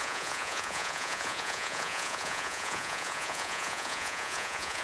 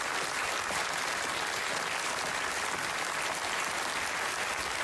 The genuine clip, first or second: second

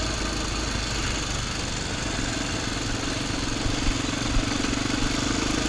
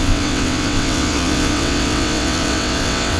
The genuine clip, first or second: first